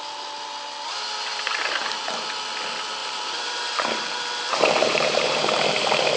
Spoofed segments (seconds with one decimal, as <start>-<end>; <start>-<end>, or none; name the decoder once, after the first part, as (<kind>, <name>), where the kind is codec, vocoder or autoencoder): 1.3-2.2 (vocoder, BigVGAN v2); 3.0-4.2; 4.8-6.2